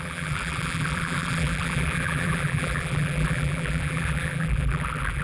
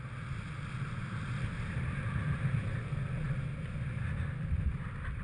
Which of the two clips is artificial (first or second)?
first